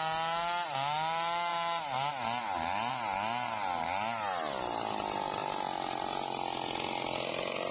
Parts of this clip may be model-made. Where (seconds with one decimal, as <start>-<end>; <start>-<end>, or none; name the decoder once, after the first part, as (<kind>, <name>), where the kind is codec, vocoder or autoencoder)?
none